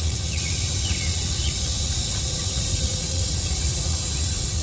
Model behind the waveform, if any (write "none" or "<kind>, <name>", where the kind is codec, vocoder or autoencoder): vocoder, Vocos